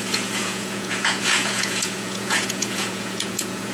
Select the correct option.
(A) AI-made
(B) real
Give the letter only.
A